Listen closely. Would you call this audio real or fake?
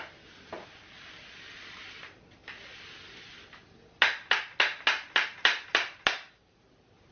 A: real